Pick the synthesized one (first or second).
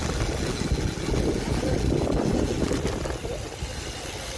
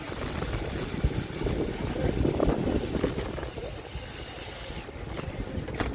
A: second